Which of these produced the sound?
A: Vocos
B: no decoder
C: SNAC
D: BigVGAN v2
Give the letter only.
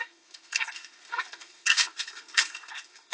C